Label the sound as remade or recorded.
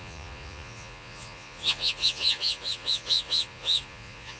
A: remade